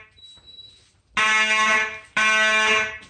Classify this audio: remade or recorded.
recorded